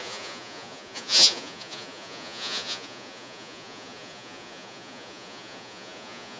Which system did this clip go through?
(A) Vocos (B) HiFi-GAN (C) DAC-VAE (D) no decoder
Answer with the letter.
A